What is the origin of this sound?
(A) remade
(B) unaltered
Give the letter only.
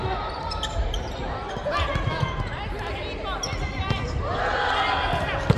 B